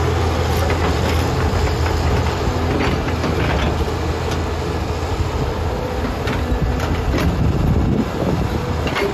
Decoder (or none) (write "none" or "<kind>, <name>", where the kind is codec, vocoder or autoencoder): none